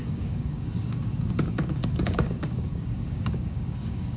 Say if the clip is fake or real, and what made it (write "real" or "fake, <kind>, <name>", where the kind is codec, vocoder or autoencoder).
fake, codec, DAC